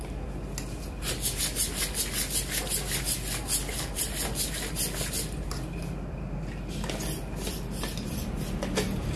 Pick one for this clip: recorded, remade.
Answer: recorded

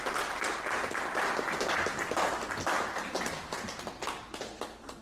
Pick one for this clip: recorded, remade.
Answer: recorded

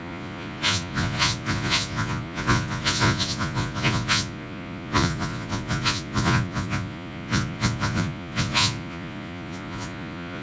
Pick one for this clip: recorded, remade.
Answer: remade